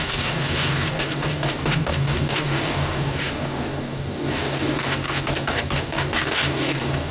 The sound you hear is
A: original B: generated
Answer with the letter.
B